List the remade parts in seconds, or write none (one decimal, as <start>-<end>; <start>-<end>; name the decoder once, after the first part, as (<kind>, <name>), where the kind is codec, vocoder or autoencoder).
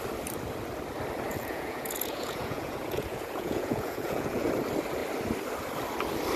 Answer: 1.3-4.5 (vocoder, Vocos)